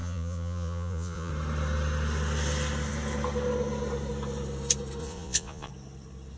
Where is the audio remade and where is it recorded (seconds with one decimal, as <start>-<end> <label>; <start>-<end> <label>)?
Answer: 0.0-1.3 remade; 1.3-5.0 recorded; 5.0-5.7 remade; 5.7-6.4 recorded